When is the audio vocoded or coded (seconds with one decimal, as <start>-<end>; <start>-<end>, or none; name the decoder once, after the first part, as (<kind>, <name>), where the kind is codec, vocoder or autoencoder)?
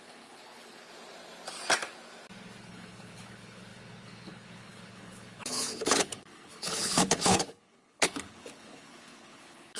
0.0-0.9 (codec, HILCodec); 2.6-9.8